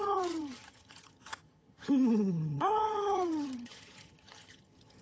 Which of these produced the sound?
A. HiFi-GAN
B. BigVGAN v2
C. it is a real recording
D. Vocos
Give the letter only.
A